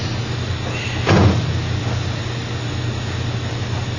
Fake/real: real